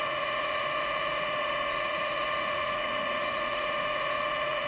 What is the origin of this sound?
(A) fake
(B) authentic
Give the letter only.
A